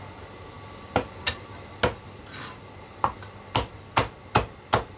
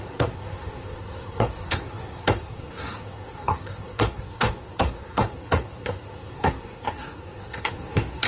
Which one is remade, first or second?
second